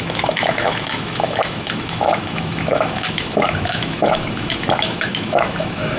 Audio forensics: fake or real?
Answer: fake